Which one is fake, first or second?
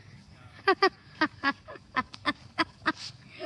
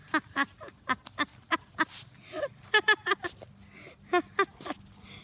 first